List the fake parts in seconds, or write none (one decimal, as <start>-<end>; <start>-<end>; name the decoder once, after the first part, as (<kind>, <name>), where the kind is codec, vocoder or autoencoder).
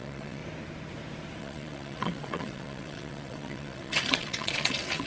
0.0-0.4 (vocoder, WaveNeXt); 1.4-5.1